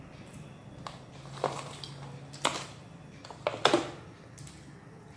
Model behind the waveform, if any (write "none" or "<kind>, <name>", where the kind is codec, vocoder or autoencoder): none